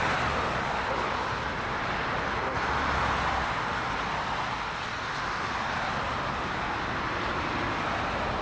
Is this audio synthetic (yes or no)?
no